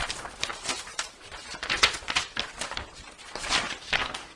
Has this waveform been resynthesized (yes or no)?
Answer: no